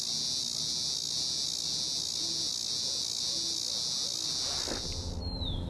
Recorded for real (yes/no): yes